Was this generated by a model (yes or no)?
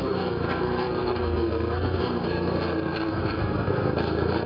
yes